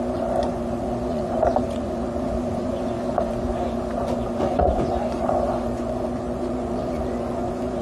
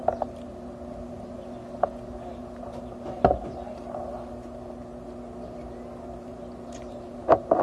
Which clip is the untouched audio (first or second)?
second